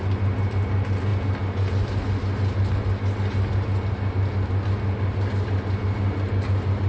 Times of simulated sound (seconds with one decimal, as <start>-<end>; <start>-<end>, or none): none